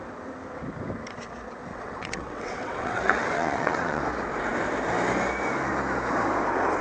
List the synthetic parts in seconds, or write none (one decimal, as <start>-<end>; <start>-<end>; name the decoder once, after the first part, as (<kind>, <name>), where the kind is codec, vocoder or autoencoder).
1.7-4.0 (vocoder, WaveNeXt)